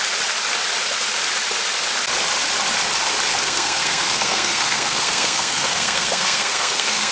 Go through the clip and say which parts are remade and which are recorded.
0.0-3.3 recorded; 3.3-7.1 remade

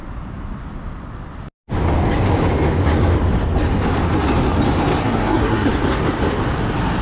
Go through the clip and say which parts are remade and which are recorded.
0.0-5.0 recorded; 5.0-5.7 remade; 5.7-7.0 recorded

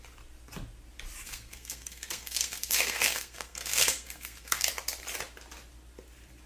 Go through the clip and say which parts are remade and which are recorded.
0.0-1.2 recorded; 1.2-4.7 remade; 4.7-6.5 recorded

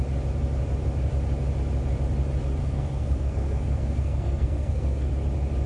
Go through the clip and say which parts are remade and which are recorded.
0.0-2.6 recorded; 2.6-5.1 remade; 5.1-5.7 recorded

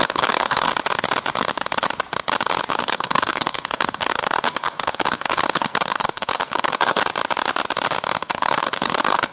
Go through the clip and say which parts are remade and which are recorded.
0.0-0.7 remade; 0.7-2.7 recorded; 2.7-7.0 remade; 7.0-8.2 recorded; 8.2-9.3 remade

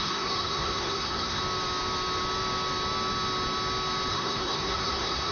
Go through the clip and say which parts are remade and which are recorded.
0.0-1.4 remade; 1.4-4.1 recorded; 4.1-5.3 remade

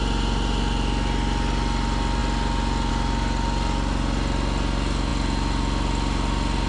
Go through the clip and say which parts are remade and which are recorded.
0.0-6.7 recorded

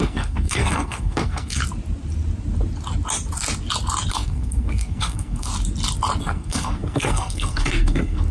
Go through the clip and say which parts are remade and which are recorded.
0.0-1.6 remade; 1.6-4.1 recorded; 4.1-5.5 remade; 5.5-6.2 recorded; 6.2-8.3 remade